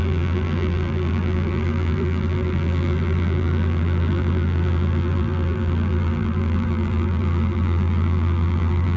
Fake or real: fake